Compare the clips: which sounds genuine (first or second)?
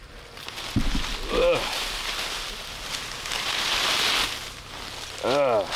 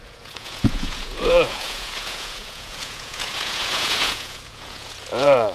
first